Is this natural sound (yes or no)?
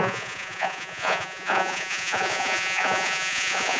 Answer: no